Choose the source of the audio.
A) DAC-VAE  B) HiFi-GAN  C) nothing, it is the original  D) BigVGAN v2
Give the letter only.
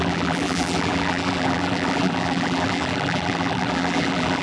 D